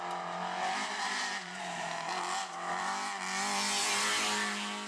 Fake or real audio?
real